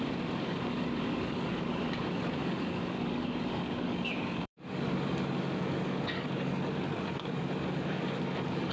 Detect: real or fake fake